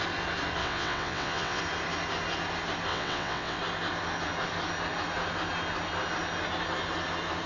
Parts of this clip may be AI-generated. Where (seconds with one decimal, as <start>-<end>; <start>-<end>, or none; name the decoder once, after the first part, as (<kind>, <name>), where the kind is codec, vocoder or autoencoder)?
0.6-1.6 (vocoder, WaveNeXt); 2.9-3.6